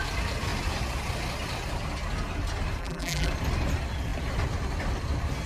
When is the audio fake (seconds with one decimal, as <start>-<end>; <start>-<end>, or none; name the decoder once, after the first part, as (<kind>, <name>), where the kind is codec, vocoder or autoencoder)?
2.8-3.3 (vocoder, BigVGAN v2)